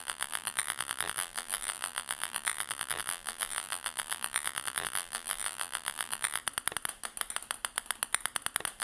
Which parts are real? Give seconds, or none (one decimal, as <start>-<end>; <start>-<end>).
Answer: 6.4-8.8